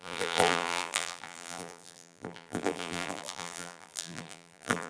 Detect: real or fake fake